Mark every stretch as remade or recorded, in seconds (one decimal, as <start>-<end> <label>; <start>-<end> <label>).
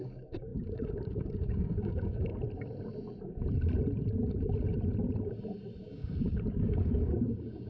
0.0-2.3 remade; 2.3-5.8 recorded; 5.8-7.7 remade